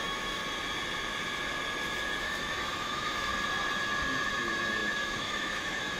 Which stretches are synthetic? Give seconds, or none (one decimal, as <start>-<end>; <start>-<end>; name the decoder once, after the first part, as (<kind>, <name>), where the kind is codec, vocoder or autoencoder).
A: 0.0-0.4 (autoencoder, DAC-VAE); 2.2-3.3; 4.3-6.0